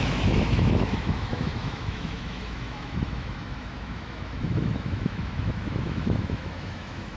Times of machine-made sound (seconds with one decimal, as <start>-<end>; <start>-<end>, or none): 0.0-7.2

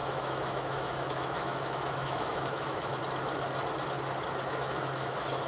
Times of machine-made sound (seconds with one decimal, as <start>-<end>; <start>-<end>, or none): 0.0-3.0; 4.5-5.5

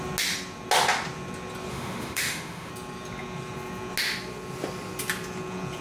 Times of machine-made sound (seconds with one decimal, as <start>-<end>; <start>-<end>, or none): 1.7-2.7

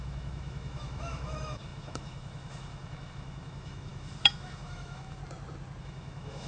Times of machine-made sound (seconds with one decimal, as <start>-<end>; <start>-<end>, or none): 0.0-5.2; 5.8-6.5